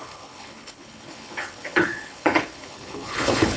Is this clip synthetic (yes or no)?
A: yes